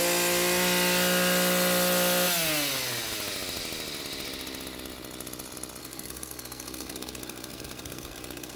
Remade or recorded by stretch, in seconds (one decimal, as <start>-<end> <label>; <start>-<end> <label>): 0.0-5.8 recorded; 5.8-8.6 remade